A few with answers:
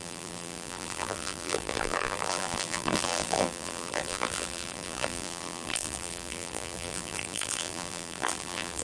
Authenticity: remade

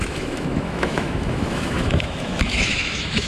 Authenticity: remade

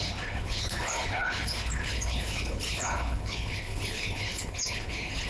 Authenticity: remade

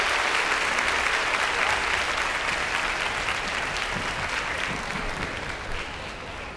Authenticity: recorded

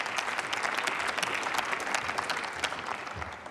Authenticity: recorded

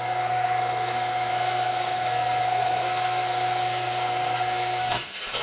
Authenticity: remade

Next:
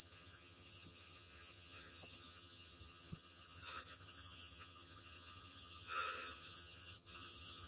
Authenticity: remade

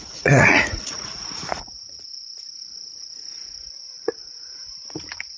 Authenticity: remade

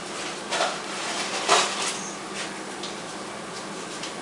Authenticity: recorded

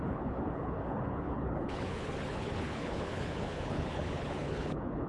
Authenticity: remade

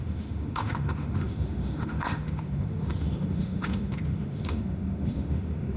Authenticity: remade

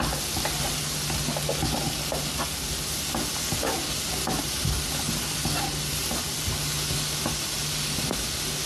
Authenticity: recorded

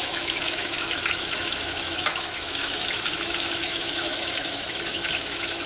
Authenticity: remade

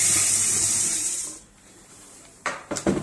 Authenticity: remade